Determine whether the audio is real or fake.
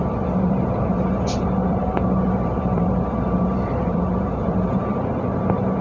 fake